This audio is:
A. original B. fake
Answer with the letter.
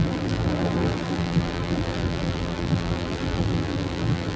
B